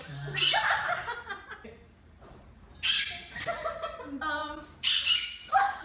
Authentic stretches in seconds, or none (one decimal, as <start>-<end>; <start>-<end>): 0.0-5.8